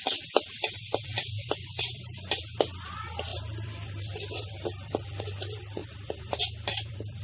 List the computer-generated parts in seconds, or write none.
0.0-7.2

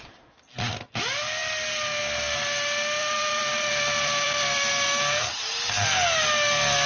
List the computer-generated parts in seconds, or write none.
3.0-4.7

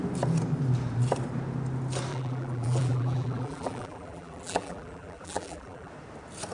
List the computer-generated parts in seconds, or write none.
2.1-5.9

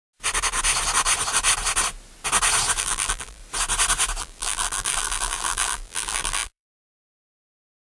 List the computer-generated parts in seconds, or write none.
2.8-3.4; 4.2-7.9